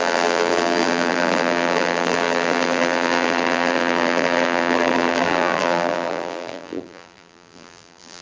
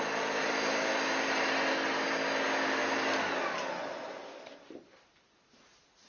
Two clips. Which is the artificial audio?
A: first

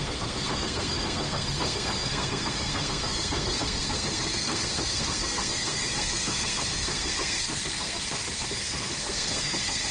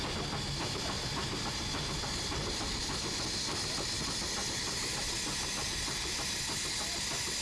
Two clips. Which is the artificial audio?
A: first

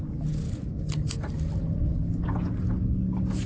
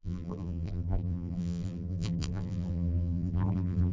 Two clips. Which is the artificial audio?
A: second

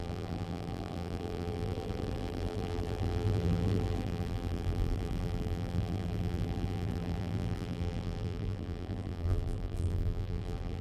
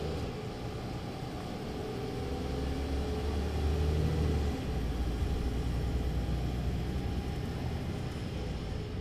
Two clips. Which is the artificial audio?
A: first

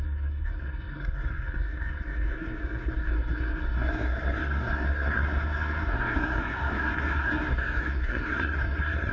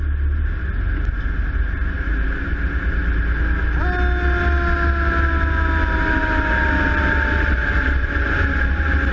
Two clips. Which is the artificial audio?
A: first